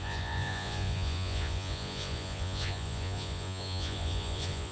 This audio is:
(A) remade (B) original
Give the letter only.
A